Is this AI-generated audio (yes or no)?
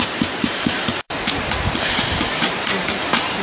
yes